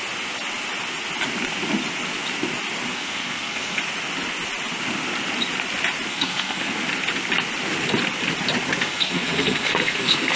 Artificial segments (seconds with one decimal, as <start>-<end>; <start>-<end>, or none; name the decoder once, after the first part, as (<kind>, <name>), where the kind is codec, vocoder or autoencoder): 2.9-3.8 (codec, SNAC); 6.1-6.7; 8.8-10.4